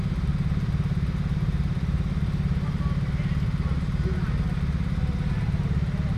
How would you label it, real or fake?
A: real